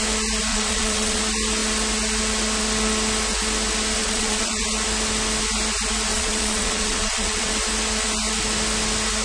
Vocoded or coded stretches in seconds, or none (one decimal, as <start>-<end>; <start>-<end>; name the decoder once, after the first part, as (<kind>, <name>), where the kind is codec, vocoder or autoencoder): 0.5-1.2 (vocoder, Vocos); 4.0-4.6; 6.1-7.5